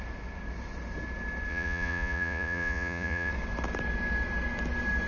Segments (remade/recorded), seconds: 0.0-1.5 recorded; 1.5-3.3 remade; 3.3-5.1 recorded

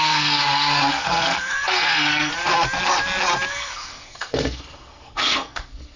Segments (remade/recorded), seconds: 0.0-0.4 remade; 0.4-0.9 recorded; 0.9-2.3 remade; 2.3-3.5 recorded; 3.5-6.0 remade

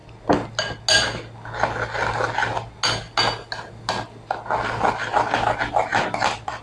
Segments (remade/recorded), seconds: 0.0-5.9 recorded; 5.9-6.6 remade

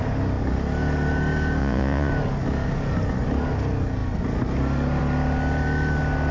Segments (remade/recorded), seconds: 0.0-1.6 recorded; 1.6-2.1 remade; 2.1-6.3 recorded

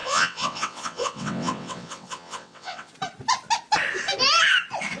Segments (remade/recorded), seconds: 0.0-2.9 remade; 2.9-5.0 recorded

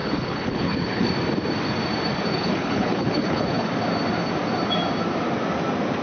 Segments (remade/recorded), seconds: 0.0-1.1 remade; 1.1-2.3 recorded; 2.3-3.7 remade; 3.7-6.0 recorded

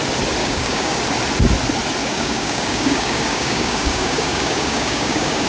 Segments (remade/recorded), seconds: 0.0-0.4 recorded; 0.4-1.0 remade; 1.0-2.0 recorded; 2.0-5.5 remade

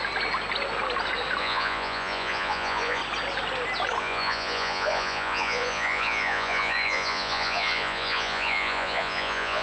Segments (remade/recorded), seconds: 0.0-1.4 recorded; 1.4-3.0 remade; 3.0-4.0 recorded; 4.0-9.6 remade